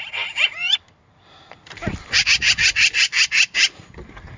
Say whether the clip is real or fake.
fake